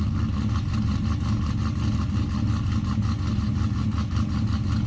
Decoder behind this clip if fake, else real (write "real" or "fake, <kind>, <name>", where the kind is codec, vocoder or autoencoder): real